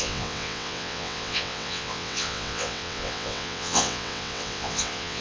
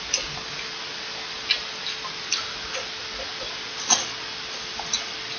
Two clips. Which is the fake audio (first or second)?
first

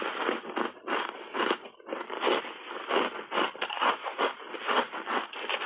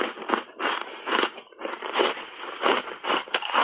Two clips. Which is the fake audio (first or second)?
second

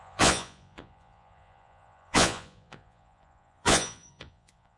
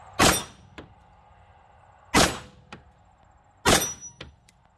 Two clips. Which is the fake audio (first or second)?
first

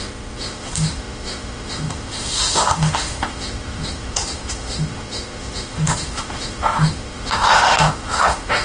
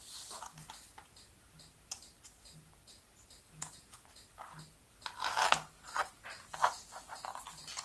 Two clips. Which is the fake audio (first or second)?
first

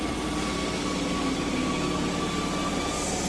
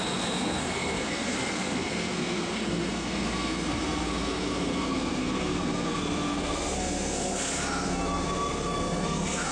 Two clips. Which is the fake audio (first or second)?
second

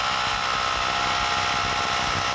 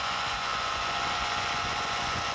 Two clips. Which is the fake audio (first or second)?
second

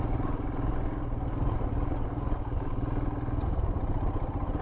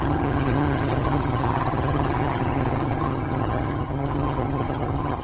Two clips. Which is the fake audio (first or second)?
second